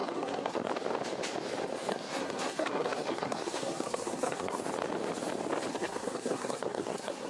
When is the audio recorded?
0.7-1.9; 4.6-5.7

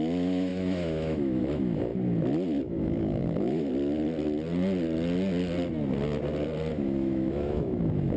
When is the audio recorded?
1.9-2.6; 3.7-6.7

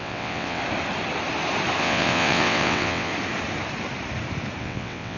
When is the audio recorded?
0.6-1.8; 3.1-4.6